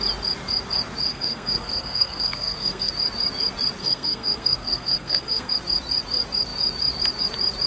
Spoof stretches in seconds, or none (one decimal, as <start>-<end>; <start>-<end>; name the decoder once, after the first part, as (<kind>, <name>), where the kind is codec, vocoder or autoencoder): 1.1-2.9 (codec, SNAC); 3.8-5.5